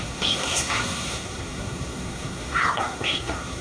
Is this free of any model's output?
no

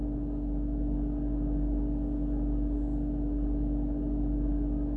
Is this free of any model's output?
yes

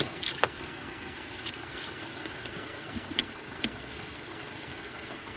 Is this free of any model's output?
no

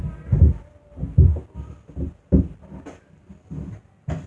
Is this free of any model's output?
yes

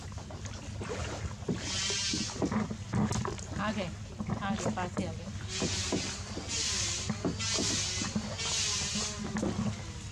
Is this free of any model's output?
yes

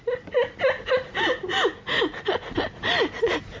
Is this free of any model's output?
yes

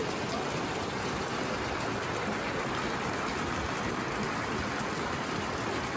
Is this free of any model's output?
yes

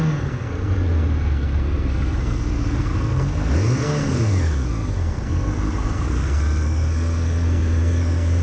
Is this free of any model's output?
no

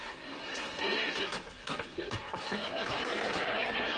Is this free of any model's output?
no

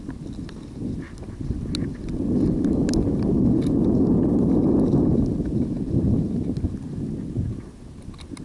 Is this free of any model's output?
yes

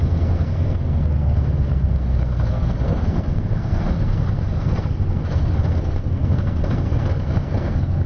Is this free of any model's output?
no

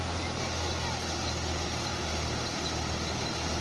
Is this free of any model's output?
yes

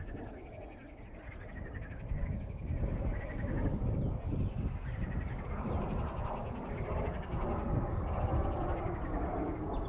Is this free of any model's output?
yes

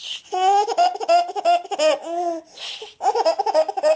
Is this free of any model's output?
yes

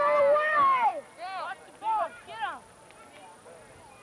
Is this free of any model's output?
yes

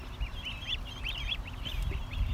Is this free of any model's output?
yes